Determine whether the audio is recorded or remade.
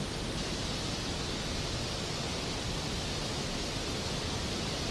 recorded